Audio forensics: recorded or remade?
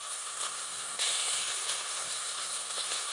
remade